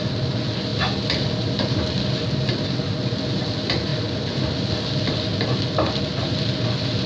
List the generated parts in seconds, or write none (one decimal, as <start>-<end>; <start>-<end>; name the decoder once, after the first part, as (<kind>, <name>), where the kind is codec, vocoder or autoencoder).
none